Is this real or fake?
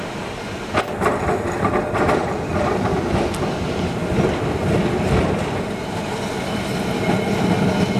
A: real